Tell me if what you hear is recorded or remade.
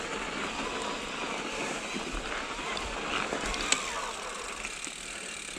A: recorded